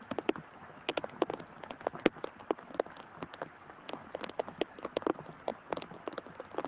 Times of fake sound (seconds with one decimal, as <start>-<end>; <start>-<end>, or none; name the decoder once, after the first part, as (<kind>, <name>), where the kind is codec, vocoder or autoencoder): none